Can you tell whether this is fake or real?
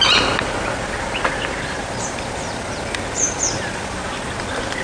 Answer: real